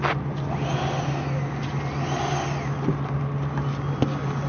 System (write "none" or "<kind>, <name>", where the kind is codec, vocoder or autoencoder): none